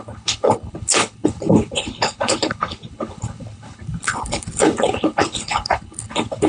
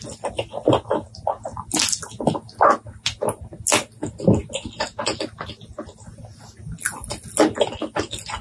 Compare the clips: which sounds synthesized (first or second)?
first